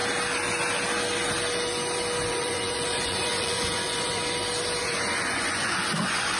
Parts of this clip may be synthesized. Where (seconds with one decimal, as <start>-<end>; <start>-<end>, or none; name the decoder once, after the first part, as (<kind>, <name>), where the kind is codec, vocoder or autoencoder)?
2.3-4.2 (vocoder, Vocos); 4.8-6.4